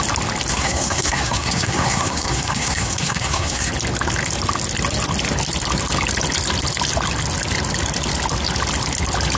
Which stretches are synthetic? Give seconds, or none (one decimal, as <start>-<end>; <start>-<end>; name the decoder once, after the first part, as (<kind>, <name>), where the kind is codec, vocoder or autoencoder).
0.5-3.7 (codec, SNAC)